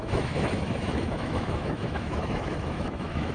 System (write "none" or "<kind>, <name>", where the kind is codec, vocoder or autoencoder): autoencoder, DAC-VAE